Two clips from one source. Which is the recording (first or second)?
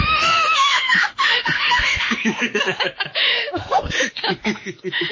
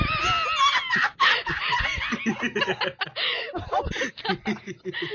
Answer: second